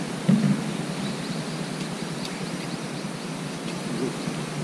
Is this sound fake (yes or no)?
no